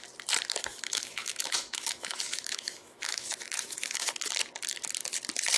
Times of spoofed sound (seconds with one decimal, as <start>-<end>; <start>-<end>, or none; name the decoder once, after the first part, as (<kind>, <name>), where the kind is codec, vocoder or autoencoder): 0.7-4.1 (autoencoder, DAC-VAE)